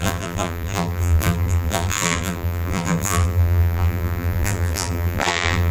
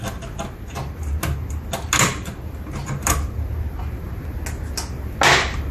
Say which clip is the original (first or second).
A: second